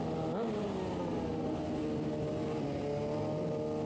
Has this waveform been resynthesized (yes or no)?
no